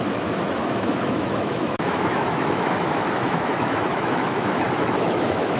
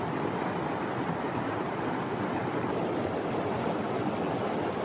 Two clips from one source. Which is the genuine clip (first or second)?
second